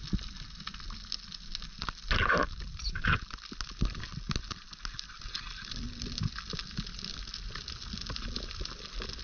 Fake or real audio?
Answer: real